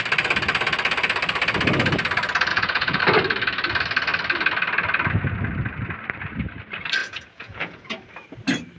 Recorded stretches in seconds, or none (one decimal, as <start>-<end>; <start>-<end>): 0.0-2.5; 3.0-7.0; 7.9-8.8